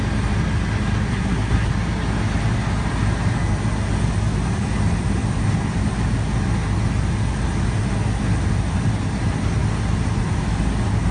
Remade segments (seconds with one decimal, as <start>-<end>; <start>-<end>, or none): 1.1-1.7